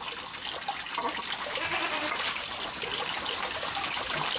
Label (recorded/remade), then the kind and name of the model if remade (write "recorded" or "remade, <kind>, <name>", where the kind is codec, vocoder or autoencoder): recorded